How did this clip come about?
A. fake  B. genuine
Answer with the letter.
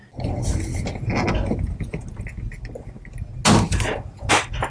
B